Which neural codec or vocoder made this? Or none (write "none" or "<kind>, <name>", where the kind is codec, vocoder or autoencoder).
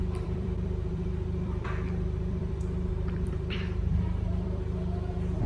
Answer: vocoder, BigVGAN v2